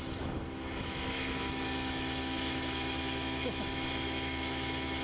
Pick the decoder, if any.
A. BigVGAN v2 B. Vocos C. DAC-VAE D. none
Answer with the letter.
C